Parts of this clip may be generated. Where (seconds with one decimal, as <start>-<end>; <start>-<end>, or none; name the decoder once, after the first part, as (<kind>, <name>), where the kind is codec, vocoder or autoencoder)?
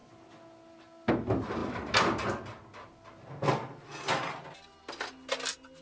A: none